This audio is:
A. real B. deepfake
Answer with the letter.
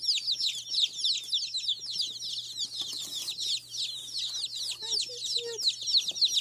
A